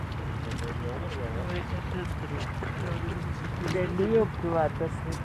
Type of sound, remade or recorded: recorded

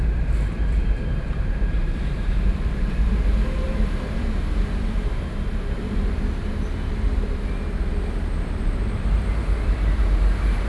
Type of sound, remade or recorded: remade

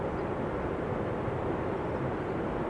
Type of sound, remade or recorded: remade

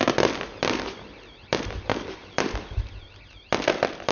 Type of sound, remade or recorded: remade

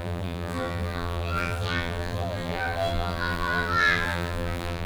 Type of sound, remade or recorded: remade